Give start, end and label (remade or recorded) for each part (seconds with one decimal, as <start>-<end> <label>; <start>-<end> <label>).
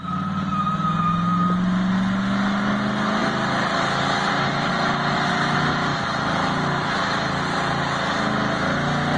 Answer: 0.0-3.2 recorded; 3.2-4.3 remade; 4.3-5.9 recorded; 5.9-8.1 remade; 8.1-9.2 recorded